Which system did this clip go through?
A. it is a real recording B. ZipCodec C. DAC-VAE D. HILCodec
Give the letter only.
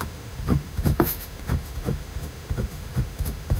C